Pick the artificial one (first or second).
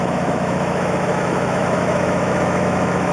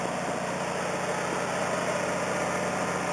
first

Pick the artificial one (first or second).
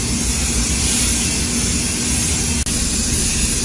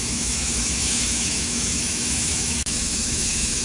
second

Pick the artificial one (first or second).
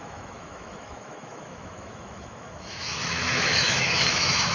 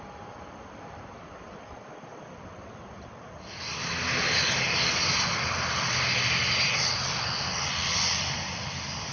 first